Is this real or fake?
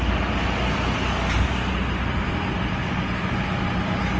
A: real